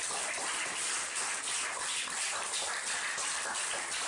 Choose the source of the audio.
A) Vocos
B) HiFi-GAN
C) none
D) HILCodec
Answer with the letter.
C